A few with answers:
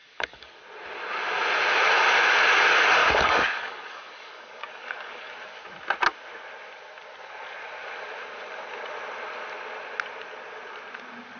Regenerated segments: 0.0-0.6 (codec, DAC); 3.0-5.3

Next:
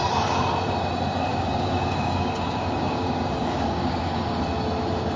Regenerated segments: 1.3-4.4 (codec, DAC)

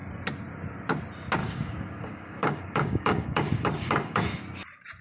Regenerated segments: 1.4-4.4 (codec, DAC)

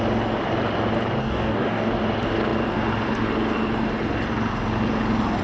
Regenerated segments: 1.2-1.9 (codec, DAC)